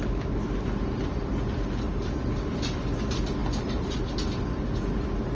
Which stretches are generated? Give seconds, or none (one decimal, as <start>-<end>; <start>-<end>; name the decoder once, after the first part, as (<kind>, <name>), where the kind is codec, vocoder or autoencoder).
none